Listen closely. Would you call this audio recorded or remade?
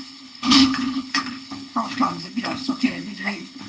remade